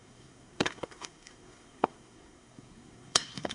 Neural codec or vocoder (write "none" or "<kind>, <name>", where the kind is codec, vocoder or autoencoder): codec, SNAC